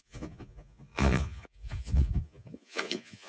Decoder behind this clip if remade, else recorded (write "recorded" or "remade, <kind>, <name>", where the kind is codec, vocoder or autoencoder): remade, vocoder, Vocos